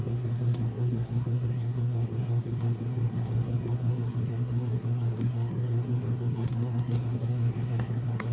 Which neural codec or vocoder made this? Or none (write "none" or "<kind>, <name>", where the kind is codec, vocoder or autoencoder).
codec, SNAC